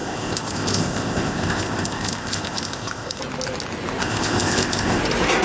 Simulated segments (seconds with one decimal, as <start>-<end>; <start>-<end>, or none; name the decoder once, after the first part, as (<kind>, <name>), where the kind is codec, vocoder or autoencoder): 0.0-3.2 (codec, ZipCodec); 4.0-5.0